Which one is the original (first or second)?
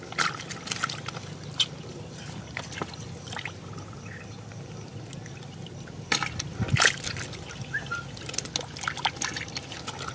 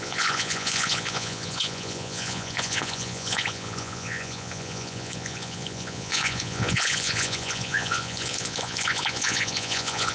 first